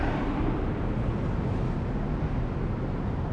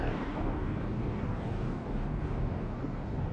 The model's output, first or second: second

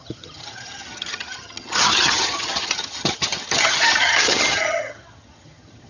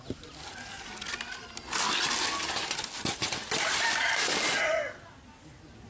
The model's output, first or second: first